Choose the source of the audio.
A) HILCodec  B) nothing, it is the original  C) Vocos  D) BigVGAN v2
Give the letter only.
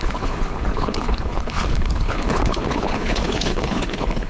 A